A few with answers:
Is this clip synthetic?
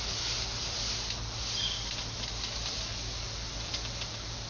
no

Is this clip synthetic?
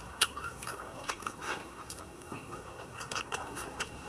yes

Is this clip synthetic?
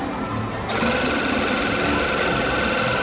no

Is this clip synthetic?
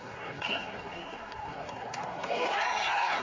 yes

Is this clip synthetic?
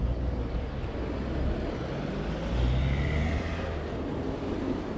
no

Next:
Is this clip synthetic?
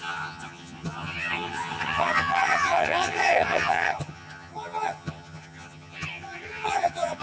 yes